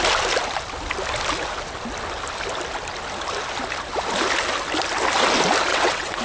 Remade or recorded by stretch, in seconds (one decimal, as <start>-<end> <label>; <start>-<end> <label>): 0.0-5.7 recorded; 5.7-6.2 remade